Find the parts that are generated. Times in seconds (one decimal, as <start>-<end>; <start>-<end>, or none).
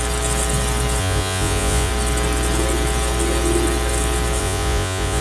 1.0-1.9; 4.4-5.2